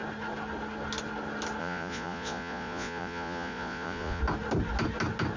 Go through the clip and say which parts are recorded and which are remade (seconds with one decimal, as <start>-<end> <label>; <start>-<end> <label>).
0.0-1.6 recorded; 1.6-4.2 remade; 4.2-5.4 recorded